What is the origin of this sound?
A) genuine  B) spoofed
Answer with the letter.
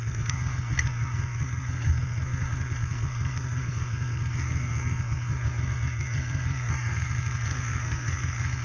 B